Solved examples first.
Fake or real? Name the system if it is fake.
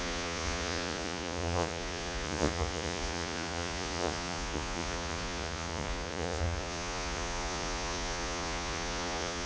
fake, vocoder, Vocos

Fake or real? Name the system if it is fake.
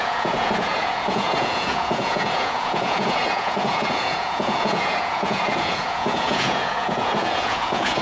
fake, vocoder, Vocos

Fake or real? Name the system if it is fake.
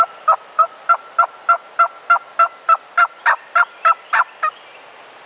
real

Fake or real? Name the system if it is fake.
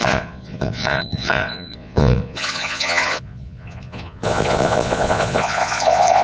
fake, vocoder, Vocos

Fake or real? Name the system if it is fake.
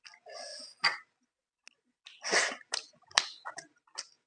real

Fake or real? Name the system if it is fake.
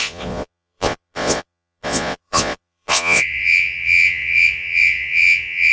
fake, vocoder, Vocos